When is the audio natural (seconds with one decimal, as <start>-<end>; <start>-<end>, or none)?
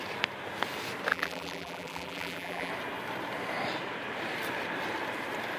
0.0-1.1; 2.7-5.6